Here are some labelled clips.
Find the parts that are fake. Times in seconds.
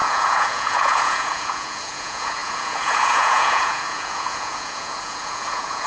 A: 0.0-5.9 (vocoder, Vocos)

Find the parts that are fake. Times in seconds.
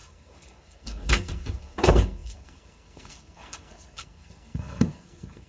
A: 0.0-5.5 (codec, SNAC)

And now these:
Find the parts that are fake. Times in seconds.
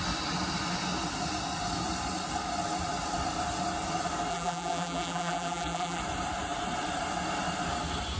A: 4.3-6.0 (vocoder, BigVGAN v2)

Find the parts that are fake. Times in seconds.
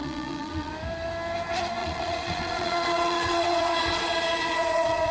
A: 0.0-0.7 (vocoder, Vocos); 1.8-5.1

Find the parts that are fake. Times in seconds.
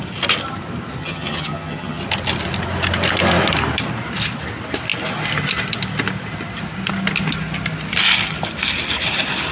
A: 1.0-2.0 (vocoder, HiFi-GAN)